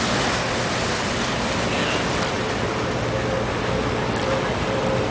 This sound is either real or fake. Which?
real